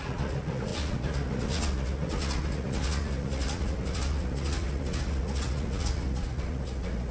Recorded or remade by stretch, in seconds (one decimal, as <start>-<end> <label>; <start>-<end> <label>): 0.0-7.1 remade